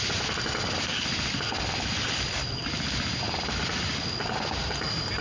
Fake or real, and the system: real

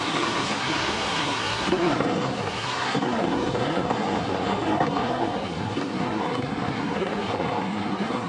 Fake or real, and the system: fake, codec, SNAC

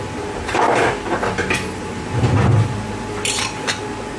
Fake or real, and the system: real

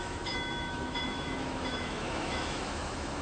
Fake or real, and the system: fake, autoencoder, DAC-VAE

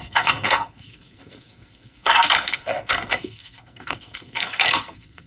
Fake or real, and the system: fake, codec, SNAC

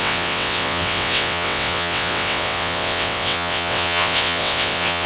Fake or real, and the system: fake, vocoder, WaveNeXt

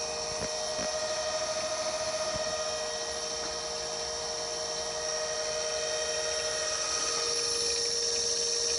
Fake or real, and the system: real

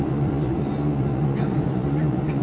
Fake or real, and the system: fake, vocoder, Vocos